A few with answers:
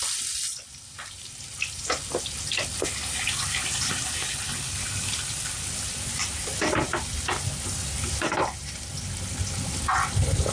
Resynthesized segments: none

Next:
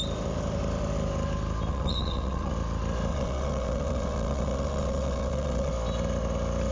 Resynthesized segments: 1.7-2.5 (vocoder, WaveNeXt); 3.1-5.7